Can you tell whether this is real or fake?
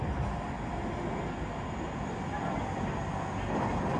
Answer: real